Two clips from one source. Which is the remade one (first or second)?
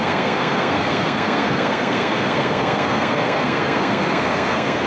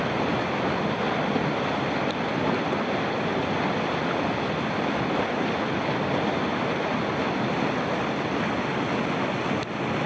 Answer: first